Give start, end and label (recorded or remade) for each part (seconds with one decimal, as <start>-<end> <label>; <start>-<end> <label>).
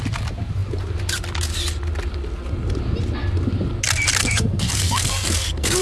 0.0-4.2 recorded; 4.2-5.8 remade